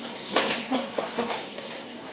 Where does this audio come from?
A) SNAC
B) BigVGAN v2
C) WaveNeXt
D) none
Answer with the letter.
A